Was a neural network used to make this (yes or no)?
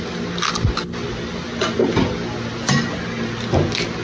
no